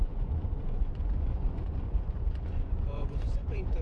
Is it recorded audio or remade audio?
remade